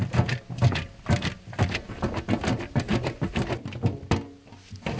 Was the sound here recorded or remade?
recorded